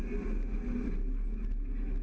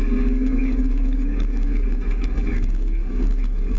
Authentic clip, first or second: first